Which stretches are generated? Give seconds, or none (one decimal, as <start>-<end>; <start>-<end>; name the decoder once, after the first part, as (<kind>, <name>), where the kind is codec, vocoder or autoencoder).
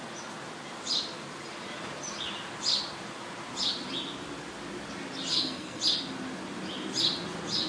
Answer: 5.3-5.8 (codec, SNAC)